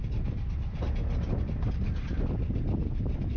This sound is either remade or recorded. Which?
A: recorded